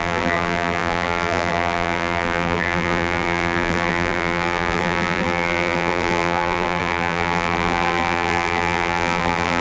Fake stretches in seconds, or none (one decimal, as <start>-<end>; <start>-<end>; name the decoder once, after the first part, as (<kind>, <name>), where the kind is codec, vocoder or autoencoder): 0.0-9.6 (vocoder, BigVGAN v2)